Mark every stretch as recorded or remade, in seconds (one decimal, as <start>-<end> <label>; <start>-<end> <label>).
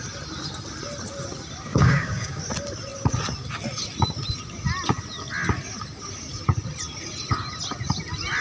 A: 0.0-1.7 recorded; 1.7-2.4 remade; 2.4-8.4 recorded